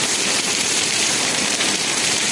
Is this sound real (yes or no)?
no